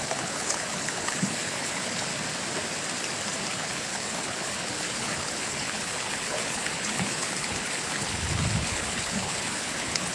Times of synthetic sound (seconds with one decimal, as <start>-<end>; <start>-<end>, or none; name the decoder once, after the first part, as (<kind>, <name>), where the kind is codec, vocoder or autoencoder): 0.0-2.1 (codec, HILCodec); 3.5-10.1